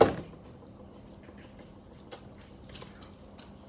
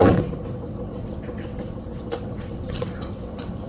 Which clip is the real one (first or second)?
first